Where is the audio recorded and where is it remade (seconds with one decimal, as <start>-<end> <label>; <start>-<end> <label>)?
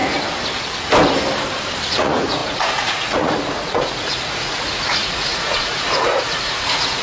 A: 0.0-1.9 recorded; 1.9-7.0 remade